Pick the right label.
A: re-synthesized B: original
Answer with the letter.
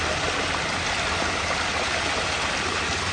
B